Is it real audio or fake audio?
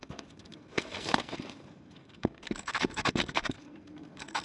fake